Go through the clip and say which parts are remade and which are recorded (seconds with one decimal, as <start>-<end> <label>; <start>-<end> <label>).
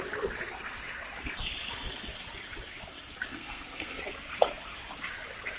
0.0-3.3 recorded; 3.3-4.0 remade; 4.0-5.6 recorded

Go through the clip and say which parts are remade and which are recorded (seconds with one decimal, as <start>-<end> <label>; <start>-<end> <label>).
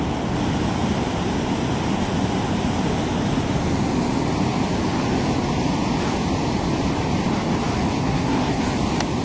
0.0-8.0 recorded; 8.0-8.6 remade; 8.6-9.2 recorded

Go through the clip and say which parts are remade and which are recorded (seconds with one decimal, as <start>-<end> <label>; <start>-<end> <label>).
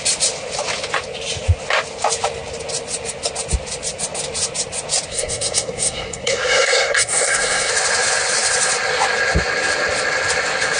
0.0-5.1 recorded; 5.1-7.7 remade; 7.7-10.8 recorded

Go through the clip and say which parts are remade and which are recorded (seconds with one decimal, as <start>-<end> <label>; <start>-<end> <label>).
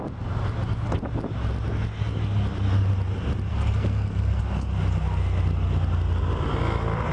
0.0-3.5 recorded; 3.5-4.4 remade; 4.4-7.1 recorded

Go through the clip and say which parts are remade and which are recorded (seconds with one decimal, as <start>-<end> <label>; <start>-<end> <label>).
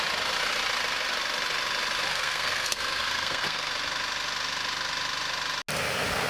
0.0-2.1 recorded; 2.1-3.7 remade; 3.7-6.3 recorded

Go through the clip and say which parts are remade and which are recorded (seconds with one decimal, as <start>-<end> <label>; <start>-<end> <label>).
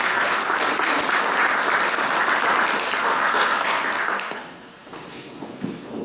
0.0-0.4 remade; 0.4-3.0 recorded; 3.0-6.0 remade